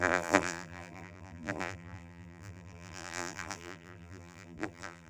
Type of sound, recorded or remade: remade